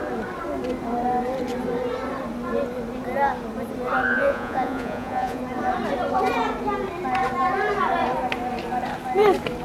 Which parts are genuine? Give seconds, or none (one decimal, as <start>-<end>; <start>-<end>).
0.0-4.1; 5.4-9.6